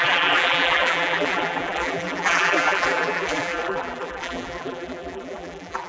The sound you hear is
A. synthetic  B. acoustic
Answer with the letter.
A